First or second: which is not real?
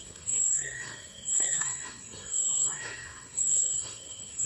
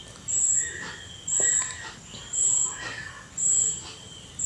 first